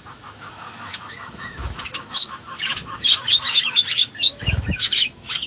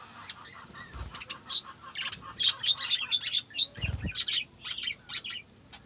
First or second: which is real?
second